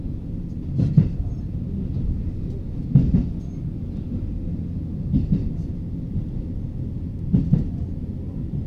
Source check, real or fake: real